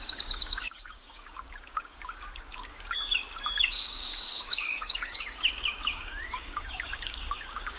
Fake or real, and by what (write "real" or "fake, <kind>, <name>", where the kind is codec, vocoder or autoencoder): fake, codec, DAC